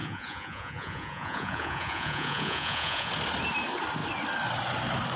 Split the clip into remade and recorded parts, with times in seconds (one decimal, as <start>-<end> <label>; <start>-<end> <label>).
0.0-3.1 remade; 3.1-5.2 recorded